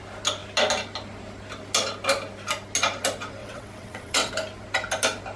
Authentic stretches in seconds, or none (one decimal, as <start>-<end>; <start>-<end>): 0.0-3.4; 4.3-5.4